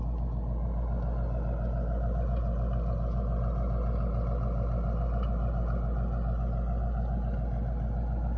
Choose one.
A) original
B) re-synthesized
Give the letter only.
A